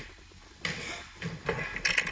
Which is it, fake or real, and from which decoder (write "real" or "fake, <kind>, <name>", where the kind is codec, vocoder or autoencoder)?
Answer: real